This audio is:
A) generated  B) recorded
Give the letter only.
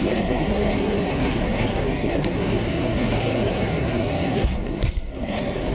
A